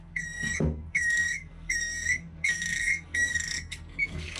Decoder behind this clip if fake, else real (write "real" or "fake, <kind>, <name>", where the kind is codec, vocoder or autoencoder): fake, codec, SNAC